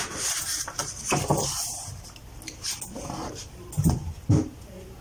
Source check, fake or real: real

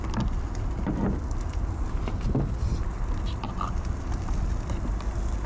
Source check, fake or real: real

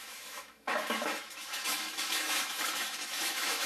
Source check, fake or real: fake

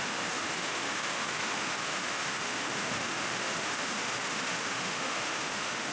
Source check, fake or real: fake